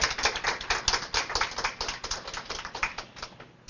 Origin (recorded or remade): recorded